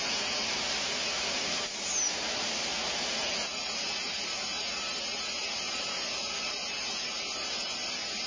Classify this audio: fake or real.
real